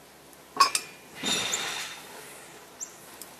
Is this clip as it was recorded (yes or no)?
yes